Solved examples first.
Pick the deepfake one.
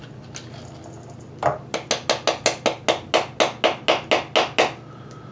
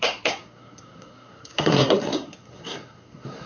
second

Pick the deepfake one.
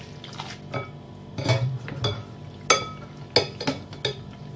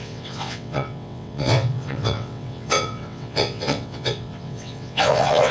second